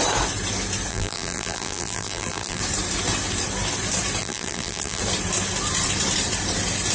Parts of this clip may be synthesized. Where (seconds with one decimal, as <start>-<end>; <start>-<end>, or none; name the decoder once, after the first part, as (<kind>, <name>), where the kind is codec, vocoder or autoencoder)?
0.9-2.6 (vocoder, BigVGAN v2); 4.2-5.0

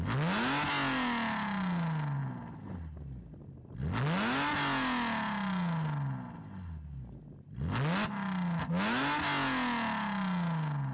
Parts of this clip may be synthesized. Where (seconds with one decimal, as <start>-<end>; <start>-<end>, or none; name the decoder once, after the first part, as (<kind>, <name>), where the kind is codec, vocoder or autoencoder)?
none

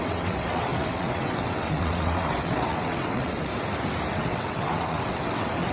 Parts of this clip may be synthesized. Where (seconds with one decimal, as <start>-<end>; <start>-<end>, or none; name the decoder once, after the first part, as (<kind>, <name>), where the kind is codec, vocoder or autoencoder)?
0.0-3.5 (vocoder, WaveNeXt); 4.1-5.7